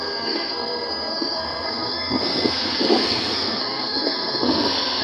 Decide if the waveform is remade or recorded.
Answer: remade